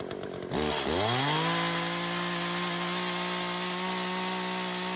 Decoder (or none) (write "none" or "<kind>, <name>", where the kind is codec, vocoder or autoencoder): none